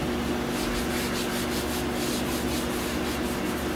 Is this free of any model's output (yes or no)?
yes